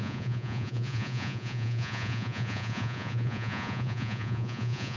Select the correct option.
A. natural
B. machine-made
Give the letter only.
B